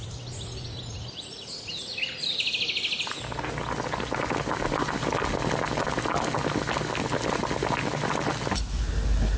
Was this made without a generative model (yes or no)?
yes